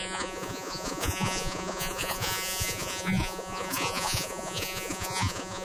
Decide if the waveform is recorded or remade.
remade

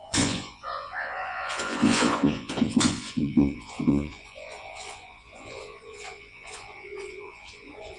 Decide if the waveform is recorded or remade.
remade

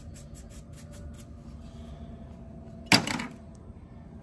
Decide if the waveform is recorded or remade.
recorded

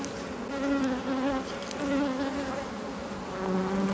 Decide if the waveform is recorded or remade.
recorded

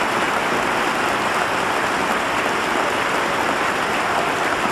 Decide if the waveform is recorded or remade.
recorded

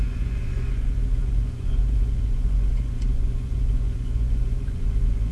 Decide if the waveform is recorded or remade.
remade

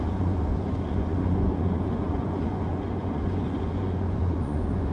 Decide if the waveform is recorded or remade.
remade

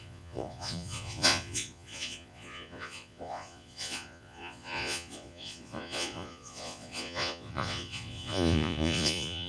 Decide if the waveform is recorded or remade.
remade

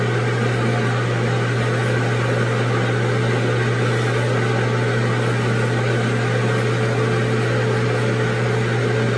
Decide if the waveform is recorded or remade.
recorded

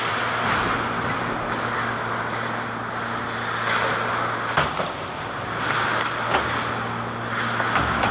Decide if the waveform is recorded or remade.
recorded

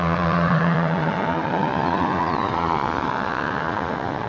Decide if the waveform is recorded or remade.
remade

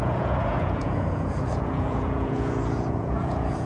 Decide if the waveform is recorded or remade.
remade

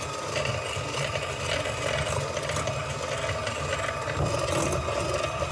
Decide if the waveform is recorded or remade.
recorded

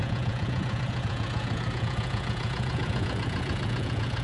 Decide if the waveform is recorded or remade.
remade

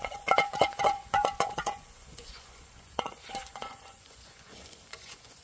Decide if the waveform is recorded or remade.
remade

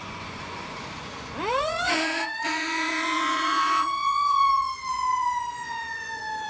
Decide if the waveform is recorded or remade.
remade